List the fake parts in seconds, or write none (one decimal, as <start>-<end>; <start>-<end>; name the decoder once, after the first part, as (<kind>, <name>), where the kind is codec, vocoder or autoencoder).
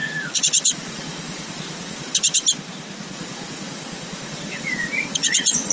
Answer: 0.0-2.1 (vocoder, Vocos); 2.7-5.7